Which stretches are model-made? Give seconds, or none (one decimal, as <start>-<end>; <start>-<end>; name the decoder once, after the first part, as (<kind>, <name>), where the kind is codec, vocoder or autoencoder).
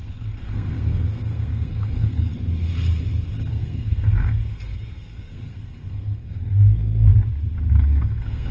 0.0-2.3 (codec, SNAC); 3.5-7.1; 7.7-8.5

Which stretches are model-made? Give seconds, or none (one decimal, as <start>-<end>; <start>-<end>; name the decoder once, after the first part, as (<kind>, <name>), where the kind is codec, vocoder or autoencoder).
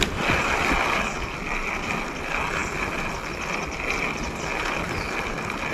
none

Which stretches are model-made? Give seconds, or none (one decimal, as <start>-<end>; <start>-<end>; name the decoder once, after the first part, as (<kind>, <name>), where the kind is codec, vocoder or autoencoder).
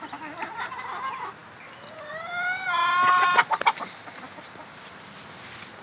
none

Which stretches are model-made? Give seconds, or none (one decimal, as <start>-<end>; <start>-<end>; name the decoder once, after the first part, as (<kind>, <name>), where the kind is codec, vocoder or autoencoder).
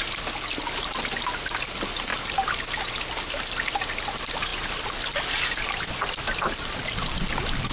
none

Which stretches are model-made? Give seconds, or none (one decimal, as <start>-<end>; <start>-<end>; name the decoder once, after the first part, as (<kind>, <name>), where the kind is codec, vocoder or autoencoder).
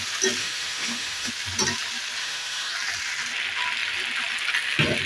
0.4-1.3 (autoencoder, DAC-VAE); 2.2-2.7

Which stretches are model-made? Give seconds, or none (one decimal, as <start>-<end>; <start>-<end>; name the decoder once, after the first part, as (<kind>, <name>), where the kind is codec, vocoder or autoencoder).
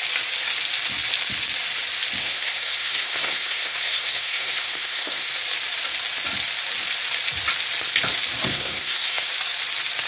2.2-5.3 (codec, SNAC); 8.5-9.3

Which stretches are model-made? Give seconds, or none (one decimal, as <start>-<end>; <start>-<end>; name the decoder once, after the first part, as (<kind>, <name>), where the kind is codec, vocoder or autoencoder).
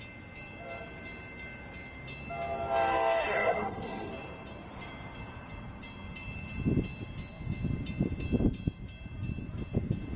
3.2-4.1 (codec, SNAC)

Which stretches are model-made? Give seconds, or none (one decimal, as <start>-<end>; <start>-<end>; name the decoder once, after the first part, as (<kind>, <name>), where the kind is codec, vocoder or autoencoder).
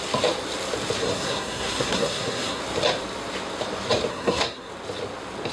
1.0-2.6 (codec, SNAC); 4.1-4.7